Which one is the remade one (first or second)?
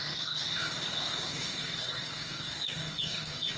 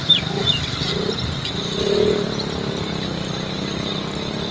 first